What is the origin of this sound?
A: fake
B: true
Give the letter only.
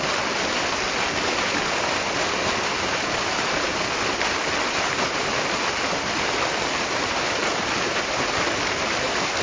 B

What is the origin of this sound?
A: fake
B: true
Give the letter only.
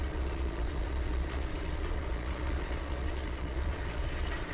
A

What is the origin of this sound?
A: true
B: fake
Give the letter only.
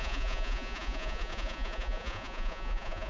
B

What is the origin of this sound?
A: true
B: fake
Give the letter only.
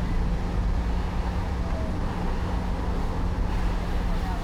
A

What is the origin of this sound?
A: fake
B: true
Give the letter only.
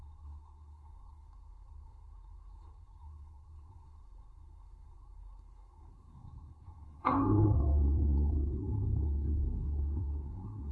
A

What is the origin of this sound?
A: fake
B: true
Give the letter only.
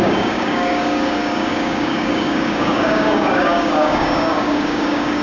A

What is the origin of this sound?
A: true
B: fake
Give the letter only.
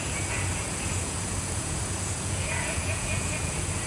B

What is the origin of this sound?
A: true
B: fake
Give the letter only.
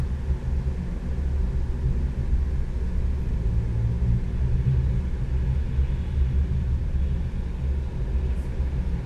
A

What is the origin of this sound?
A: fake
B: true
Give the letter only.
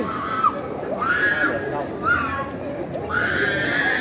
B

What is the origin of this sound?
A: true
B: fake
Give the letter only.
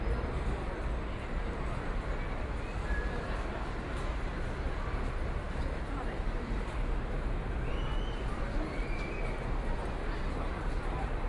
A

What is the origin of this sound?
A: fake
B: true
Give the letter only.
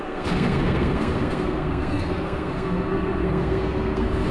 A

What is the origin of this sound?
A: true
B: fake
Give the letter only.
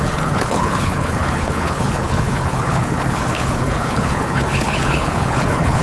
B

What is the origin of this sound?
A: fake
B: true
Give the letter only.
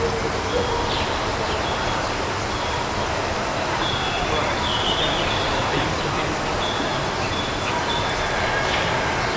B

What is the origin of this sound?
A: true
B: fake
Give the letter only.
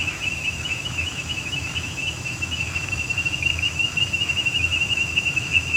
B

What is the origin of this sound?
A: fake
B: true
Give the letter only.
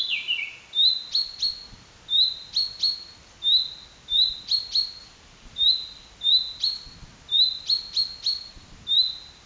B